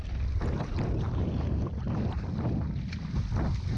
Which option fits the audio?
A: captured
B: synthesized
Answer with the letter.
A